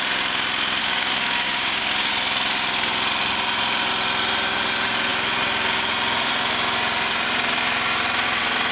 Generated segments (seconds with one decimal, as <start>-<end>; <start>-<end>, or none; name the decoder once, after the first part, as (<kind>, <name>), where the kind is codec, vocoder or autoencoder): 0.8-2.1 (codec, DAC)